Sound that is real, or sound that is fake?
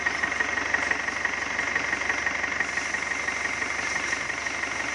real